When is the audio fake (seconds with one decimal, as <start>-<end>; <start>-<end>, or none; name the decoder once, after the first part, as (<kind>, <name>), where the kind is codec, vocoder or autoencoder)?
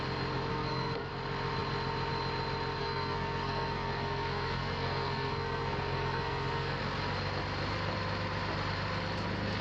0.5-1.1 (codec, SNAC); 2.8-6.8